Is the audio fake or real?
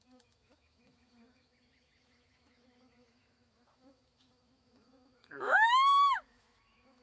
fake